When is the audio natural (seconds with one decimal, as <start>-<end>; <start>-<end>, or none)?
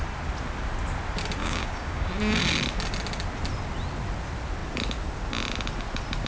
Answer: 0.0-1.4; 2.1-6.3